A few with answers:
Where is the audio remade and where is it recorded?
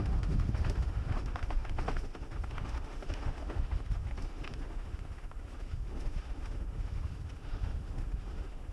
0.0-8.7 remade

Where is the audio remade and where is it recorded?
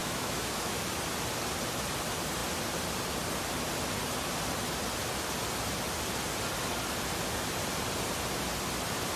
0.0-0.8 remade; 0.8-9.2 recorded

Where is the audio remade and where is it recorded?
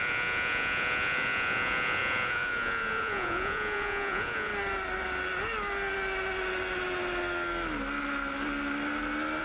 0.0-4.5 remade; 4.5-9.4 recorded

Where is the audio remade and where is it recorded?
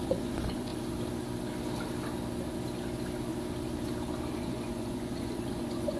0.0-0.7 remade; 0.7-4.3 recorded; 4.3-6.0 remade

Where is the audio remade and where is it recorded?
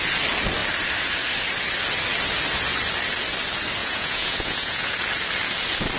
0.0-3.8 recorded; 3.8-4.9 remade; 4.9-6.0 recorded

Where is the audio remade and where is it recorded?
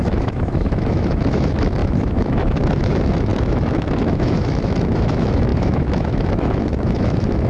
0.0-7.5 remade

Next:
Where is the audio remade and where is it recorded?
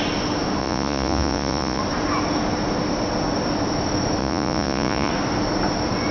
0.0-0.6 recorded; 0.6-1.8 remade; 1.8-4.2 recorded; 4.2-5.1 remade; 5.1-6.1 recorded